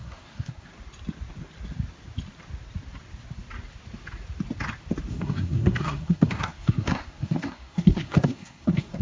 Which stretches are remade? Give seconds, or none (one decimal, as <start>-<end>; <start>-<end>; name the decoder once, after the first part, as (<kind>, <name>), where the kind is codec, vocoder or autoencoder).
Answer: 0.0-0.7 (codec, SNAC); 5.1-9.0